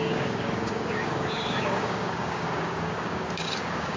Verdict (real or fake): fake